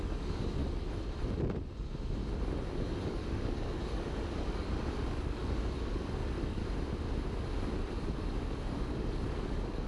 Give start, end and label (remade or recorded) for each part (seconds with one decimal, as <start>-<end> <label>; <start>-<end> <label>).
0.0-0.6 remade; 0.6-3.0 recorded; 3.0-6.6 remade; 6.6-8.0 recorded; 8.0-9.9 remade